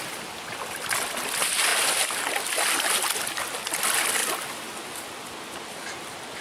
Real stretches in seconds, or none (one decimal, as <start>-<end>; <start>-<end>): 0.0-6.4